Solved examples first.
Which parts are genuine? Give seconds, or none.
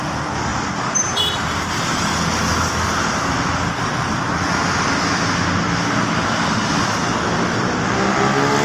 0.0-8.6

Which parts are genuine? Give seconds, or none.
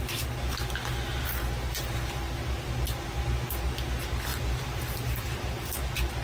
0.0-4.3; 5.7-6.2